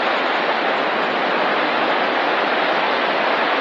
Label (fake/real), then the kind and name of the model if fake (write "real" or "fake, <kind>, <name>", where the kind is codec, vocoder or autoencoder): real